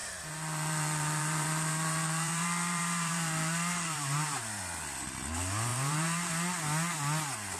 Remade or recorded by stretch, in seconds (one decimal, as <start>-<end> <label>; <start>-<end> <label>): 0.0-4.6 remade; 4.6-5.7 recorded; 5.7-6.3 remade; 6.3-7.6 recorded